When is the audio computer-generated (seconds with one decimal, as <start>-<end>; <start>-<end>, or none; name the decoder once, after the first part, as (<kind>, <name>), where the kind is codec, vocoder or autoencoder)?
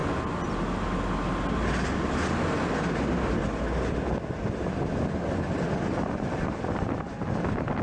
none